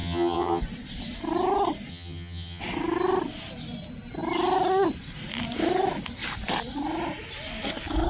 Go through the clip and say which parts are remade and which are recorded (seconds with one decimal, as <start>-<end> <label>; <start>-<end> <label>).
0.0-0.6 remade; 0.6-1.9 recorded; 1.9-2.6 remade; 2.6-8.1 recorded